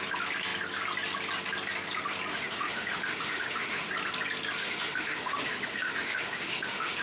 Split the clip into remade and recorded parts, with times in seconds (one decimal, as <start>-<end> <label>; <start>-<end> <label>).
0.0-2.3 recorded; 2.3-3.9 remade; 3.9-4.6 recorded; 4.6-7.0 remade